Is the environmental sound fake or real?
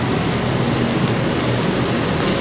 real